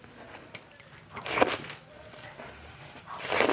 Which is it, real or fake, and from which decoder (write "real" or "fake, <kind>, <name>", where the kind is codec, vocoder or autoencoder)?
real